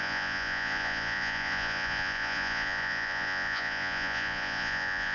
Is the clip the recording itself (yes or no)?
no